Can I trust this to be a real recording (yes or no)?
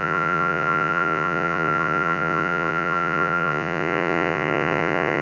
no